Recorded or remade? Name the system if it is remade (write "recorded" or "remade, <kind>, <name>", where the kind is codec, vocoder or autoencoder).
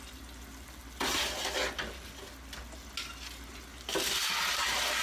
recorded